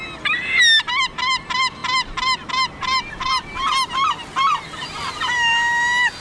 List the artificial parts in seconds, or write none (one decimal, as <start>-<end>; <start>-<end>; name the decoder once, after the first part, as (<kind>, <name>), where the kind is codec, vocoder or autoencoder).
none